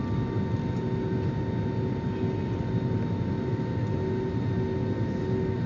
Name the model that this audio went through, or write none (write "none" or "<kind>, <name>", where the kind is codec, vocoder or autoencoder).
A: none